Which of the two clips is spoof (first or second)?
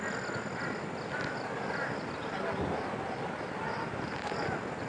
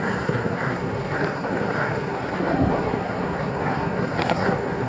second